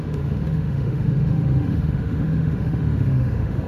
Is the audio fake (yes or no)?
yes